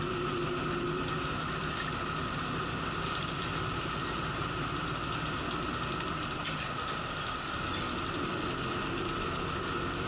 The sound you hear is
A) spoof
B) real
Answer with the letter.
B